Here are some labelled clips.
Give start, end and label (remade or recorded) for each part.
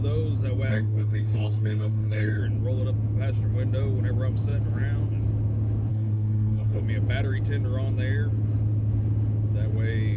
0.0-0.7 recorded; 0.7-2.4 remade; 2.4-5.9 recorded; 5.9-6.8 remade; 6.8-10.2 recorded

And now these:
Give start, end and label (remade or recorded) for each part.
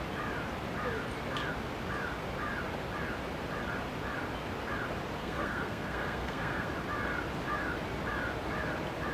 0.0-5.2 recorded; 5.2-6.7 remade; 6.7-9.1 recorded